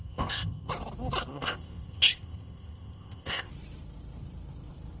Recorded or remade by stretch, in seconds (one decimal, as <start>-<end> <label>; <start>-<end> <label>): 0.0-0.7 remade; 0.7-1.3 recorded; 1.3-3.5 remade; 3.5-5.0 recorded